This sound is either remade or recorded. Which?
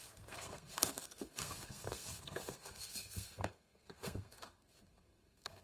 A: remade